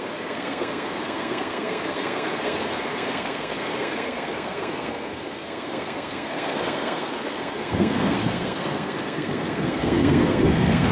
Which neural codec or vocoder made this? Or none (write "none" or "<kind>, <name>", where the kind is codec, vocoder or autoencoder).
codec, SNAC